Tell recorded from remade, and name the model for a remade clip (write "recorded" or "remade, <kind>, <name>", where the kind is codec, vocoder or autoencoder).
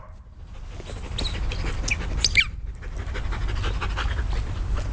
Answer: recorded